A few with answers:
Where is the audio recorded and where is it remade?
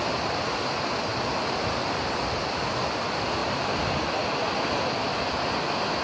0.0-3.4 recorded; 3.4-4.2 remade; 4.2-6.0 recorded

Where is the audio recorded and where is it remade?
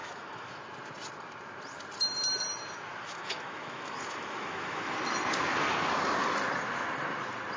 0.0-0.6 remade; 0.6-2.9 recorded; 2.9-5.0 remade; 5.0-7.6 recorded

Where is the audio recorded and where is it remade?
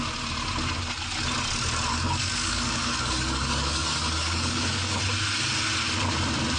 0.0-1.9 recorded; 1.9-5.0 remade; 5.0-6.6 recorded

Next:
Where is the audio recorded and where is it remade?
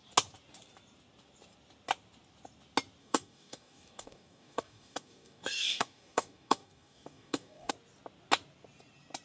0.0-3.0 recorded; 3.0-7.7 remade; 7.7-9.2 recorded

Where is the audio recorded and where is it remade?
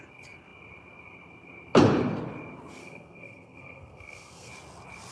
0.0-2.8 recorded; 2.8-4.5 remade; 4.5-5.1 recorded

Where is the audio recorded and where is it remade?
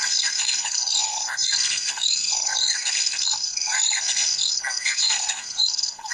0.0-6.1 remade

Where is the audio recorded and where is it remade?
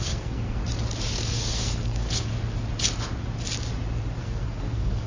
0.0-0.6 remade; 0.6-1.1 recorded; 1.1-2.3 remade; 2.3-4.2 recorded; 4.2-5.1 remade